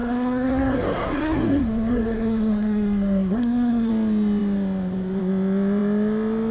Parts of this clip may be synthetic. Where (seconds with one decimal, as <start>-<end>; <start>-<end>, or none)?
0.0-3.9